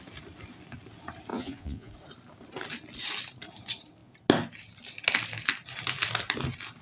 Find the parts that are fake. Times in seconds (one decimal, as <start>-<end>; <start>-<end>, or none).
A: 1.3-1.9